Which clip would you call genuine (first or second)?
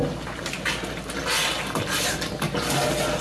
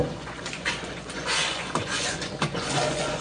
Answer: first